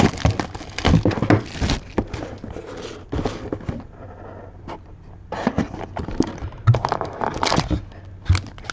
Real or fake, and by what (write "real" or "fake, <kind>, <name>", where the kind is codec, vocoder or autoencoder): real